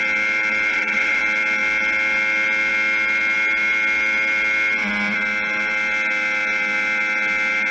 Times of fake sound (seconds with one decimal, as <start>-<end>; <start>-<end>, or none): 0.7-1.2